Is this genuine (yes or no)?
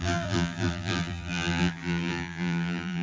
no